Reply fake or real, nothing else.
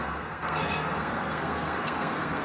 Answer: fake